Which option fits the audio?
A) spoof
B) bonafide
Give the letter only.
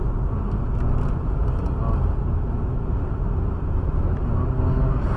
B